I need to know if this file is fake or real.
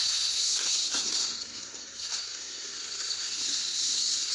fake